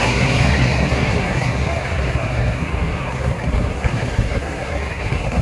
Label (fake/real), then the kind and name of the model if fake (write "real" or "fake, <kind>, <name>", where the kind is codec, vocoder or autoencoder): fake, codec, SNAC